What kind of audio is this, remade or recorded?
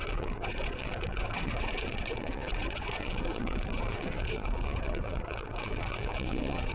remade